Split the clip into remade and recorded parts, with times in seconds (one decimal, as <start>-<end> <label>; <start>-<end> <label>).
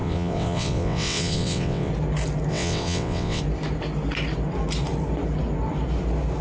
0.0-1.9 remade; 1.9-2.5 recorded; 2.5-3.4 remade; 3.4-6.4 recorded